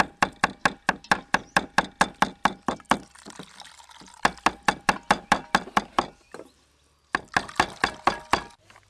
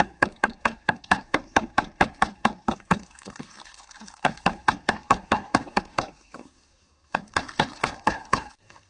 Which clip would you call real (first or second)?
first